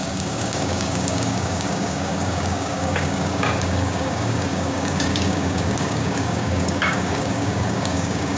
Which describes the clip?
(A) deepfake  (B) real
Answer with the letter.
A